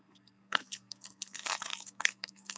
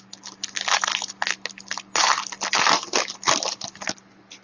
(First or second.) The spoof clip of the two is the first